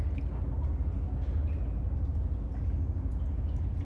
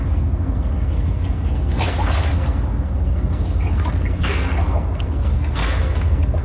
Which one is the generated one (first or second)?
second